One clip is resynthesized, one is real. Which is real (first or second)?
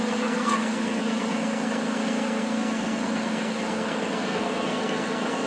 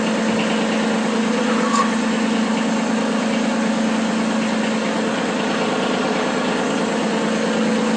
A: second